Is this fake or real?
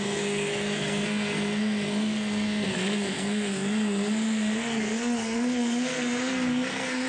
fake